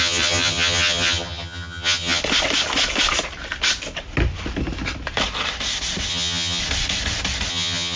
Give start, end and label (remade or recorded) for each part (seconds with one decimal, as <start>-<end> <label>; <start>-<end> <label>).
0.0-2.2 remade; 2.2-6.1 recorded; 6.1-6.6 remade; 6.6-7.5 recorded; 7.5-8.0 remade